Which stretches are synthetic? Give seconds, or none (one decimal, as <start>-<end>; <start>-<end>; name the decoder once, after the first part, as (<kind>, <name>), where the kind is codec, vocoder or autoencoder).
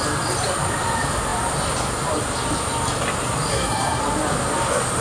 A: 3.5-4.0 (codec, SNAC)